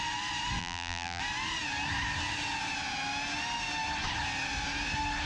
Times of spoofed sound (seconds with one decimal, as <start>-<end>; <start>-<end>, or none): 0.6-1.2